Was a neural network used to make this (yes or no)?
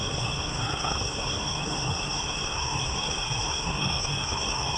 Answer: yes